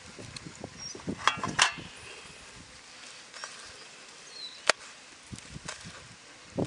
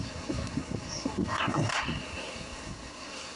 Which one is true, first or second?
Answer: first